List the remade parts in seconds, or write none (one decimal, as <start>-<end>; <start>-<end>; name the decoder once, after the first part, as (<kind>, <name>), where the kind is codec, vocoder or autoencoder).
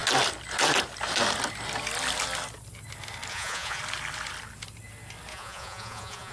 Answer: 3.3-3.8 (vocoder, Vocos); 5.3-6.3